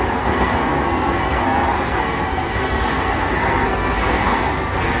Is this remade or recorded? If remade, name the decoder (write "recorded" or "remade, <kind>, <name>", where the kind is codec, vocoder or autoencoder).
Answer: remade, codec, SNAC